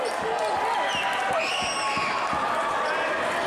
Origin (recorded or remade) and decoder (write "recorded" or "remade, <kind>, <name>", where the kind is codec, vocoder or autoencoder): recorded